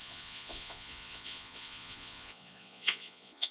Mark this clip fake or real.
fake